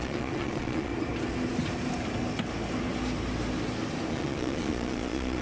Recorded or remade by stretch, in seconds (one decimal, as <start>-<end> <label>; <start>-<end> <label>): 0.0-0.9 remade; 0.9-4.1 recorded; 4.1-5.4 remade